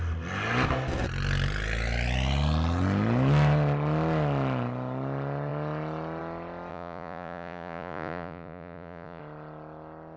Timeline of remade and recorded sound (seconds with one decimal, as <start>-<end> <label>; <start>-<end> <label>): 0.0-6.7 recorded; 6.7-9.2 remade; 9.2-10.2 recorded